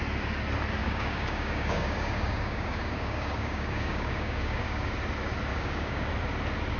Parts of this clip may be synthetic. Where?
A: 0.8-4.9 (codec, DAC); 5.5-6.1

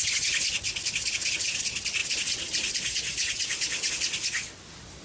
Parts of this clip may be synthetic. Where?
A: none